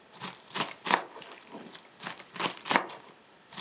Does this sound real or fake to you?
fake